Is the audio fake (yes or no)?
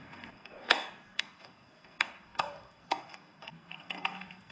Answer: yes